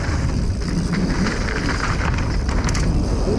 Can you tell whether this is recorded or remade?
remade